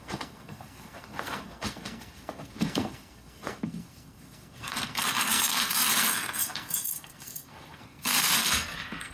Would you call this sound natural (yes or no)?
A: no